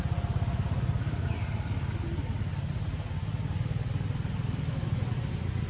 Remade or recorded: recorded